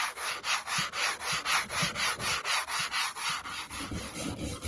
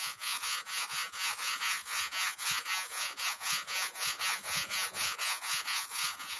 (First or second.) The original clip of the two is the first